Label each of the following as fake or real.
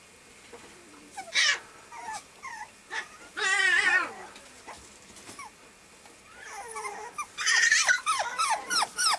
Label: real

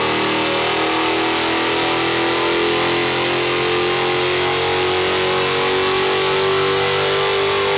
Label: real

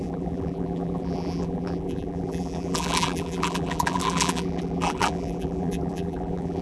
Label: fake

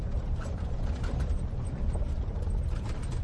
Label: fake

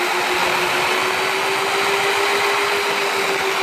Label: real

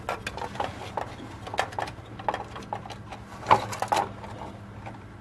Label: real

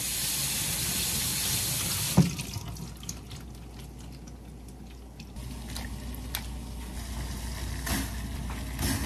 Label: real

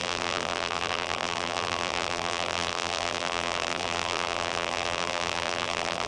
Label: fake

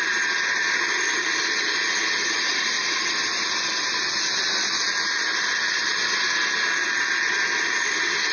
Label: real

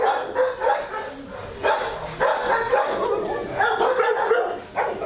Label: real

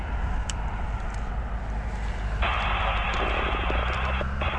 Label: fake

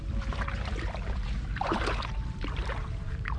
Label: fake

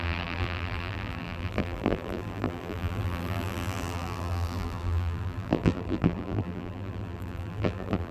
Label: fake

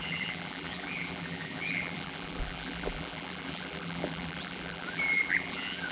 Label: fake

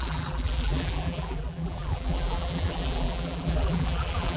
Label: fake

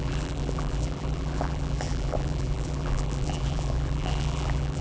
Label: fake